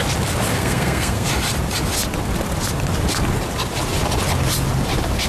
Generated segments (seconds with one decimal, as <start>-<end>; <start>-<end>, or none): 0.5-1.3